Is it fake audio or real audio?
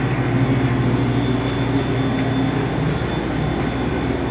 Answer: real